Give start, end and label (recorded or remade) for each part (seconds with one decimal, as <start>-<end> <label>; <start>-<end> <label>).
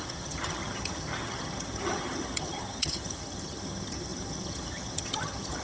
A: 0.0-5.6 remade